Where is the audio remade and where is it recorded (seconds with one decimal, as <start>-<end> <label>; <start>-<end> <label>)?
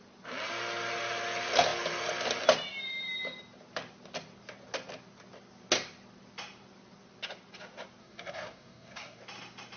0.0-8.0 recorded; 8.0-9.2 remade; 9.2-9.8 recorded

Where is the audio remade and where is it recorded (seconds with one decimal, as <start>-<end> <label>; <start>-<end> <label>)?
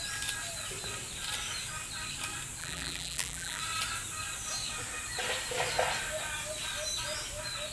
0.0-2.6 recorded; 2.6-3.6 remade; 3.6-7.7 recorded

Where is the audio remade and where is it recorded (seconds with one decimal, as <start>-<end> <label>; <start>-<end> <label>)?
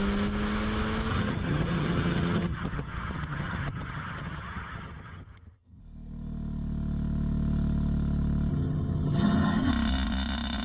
0.0-1.1 recorded; 1.1-5.8 remade; 5.8-8.5 recorded; 8.5-9.7 remade; 9.7-10.6 recorded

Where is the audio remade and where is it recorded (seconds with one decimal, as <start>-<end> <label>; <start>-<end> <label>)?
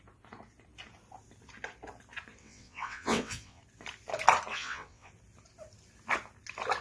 0.0-2.4 recorded; 2.4-3.6 remade; 3.6-4.5 recorded; 4.5-5.1 remade; 5.1-6.8 recorded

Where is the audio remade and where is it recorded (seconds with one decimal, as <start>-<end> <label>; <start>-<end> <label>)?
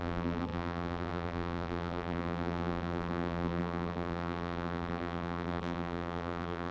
0.0-6.7 remade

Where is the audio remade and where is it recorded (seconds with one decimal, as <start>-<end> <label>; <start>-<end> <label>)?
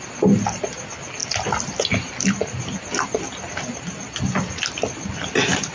0.0-5.7 recorded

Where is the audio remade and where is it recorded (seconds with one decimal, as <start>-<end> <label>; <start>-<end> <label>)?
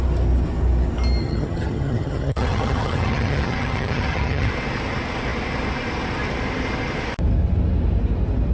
0.0-1.2 recorded; 1.2-4.5 remade; 4.5-8.5 recorded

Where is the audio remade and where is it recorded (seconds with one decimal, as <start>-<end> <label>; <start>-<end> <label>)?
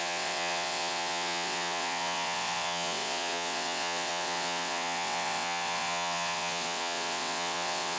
0.0-8.0 remade